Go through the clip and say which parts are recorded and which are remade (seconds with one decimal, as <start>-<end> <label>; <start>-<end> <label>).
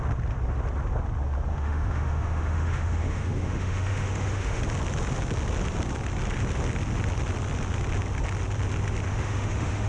0.0-1.5 recorded; 1.5-4.6 remade; 4.6-9.1 recorded; 9.1-9.9 remade